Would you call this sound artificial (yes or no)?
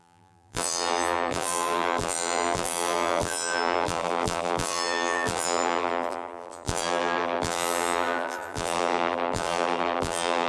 yes